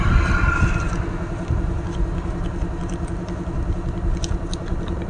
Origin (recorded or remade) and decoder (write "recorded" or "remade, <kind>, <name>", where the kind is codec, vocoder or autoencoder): recorded